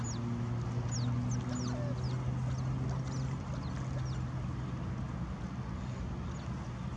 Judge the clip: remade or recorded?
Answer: recorded